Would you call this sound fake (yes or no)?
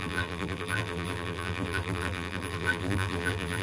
yes